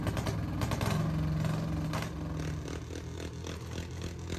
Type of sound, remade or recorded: recorded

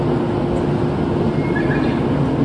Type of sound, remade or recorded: recorded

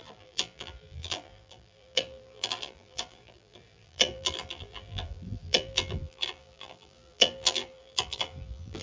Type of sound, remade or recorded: remade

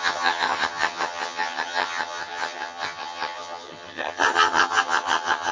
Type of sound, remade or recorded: remade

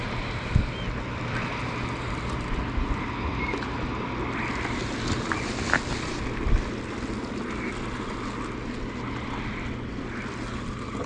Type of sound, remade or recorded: recorded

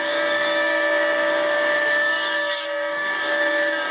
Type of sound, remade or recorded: remade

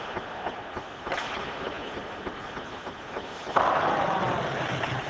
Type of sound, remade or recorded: recorded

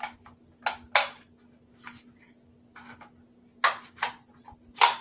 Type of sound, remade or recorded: recorded